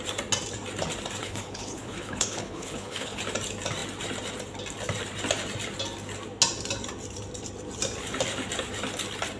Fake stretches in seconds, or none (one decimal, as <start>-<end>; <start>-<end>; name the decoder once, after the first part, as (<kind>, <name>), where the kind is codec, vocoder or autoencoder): 1.2-3.2 (codec, HILCodec)